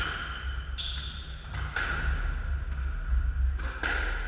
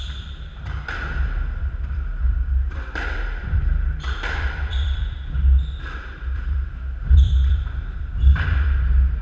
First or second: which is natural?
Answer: first